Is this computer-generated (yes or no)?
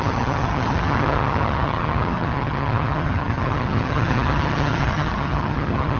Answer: yes